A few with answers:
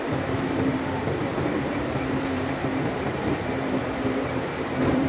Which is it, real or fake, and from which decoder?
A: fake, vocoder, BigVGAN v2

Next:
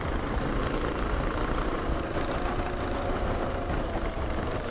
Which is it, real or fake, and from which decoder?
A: fake, vocoder, BigVGAN v2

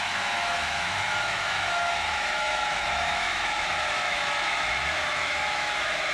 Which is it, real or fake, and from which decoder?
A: fake, autoencoder, DAC-VAE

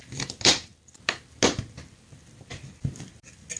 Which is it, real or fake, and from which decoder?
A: real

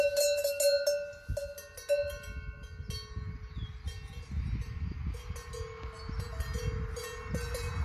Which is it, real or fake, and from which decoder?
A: real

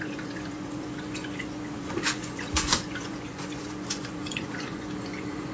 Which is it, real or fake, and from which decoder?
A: fake, vocoder, Vocos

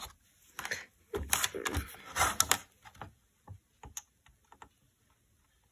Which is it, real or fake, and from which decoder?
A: real